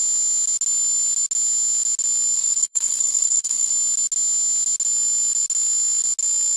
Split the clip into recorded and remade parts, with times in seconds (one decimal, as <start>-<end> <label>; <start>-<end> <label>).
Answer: 0.0-2.4 recorded; 2.4-3.7 remade; 3.7-6.6 recorded